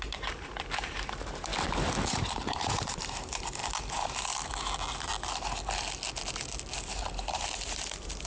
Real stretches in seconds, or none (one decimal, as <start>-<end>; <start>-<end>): 1.5-2.1; 3.6-7.0